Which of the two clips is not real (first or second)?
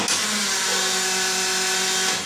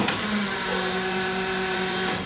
second